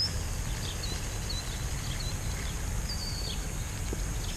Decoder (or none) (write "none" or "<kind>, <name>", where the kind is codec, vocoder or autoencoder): none